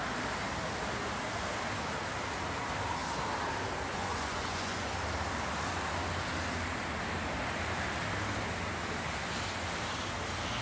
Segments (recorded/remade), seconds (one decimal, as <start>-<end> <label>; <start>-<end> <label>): 0.0-3.9 recorded; 3.9-4.9 remade; 4.9-10.6 recorded